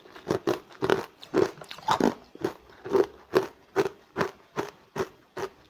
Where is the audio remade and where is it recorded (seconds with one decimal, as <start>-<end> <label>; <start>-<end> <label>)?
0.0-5.7 recorded